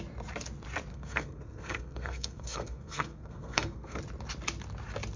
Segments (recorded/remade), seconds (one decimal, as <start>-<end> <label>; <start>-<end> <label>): 0.0-0.9 recorded; 0.9-4.0 remade; 4.0-5.2 recorded